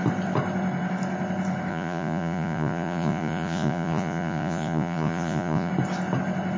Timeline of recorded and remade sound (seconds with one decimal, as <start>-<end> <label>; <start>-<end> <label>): 0.0-1.7 recorded; 1.7-5.7 remade; 5.7-6.6 recorded